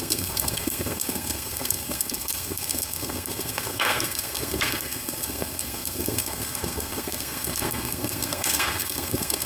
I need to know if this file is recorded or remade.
remade